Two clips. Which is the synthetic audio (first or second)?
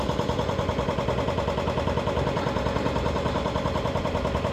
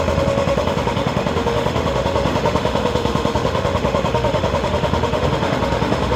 second